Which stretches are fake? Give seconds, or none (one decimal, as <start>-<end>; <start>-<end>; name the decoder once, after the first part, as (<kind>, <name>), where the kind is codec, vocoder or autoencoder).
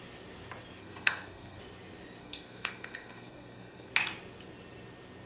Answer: 0.8-1.6 (codec, SNAC); 2.2-3.9